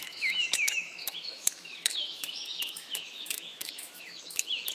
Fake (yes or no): yes